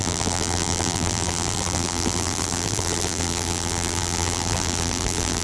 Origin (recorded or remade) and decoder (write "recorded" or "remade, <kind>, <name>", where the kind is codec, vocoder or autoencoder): remade, vocoder, BigVGAN v2